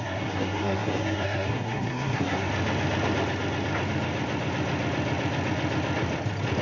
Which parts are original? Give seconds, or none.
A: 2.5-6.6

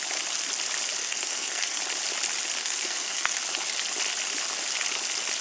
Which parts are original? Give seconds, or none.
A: 0.0-1.0; 1.8-2.6; 3.4-5.4

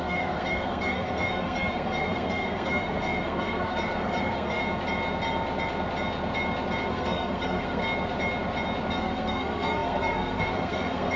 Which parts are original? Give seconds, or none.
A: 4.6-6.9; 7.8-8.9